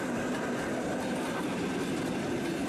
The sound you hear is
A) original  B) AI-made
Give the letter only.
A